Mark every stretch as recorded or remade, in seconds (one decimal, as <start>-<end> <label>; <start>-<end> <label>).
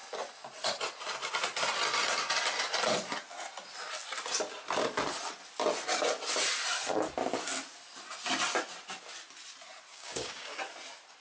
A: 0.0-9.9 recorded; 9.9-10.6 remade; 10.6-11.2 recorded